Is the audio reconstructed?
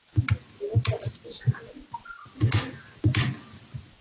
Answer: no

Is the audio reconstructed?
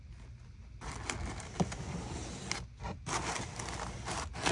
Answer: no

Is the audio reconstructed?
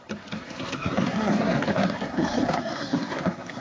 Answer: yes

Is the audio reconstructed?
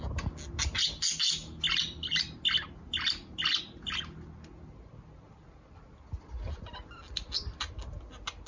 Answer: no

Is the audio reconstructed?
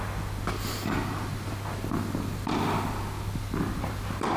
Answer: no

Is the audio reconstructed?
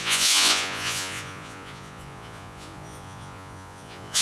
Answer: yes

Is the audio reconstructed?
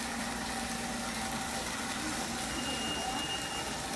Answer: no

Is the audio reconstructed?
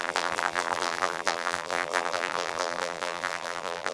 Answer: yes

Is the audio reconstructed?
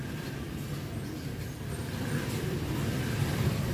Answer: yes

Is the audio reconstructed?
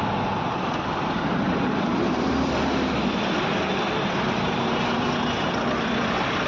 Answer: yes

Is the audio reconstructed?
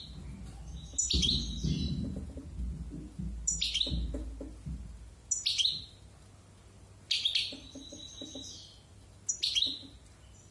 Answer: no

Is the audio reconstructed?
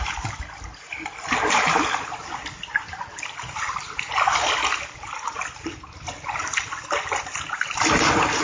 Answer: no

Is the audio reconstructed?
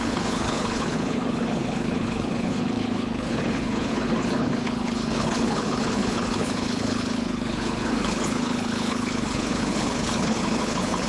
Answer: yes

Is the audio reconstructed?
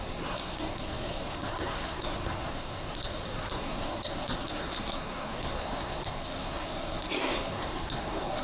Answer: yes